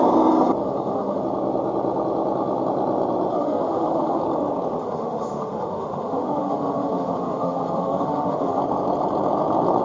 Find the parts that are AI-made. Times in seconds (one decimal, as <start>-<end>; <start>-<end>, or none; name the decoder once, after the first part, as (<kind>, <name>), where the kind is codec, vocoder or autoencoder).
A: 0.6-1.2 (autoencoder, DAC-VAE); 3.3-4.2; 4.8-8.6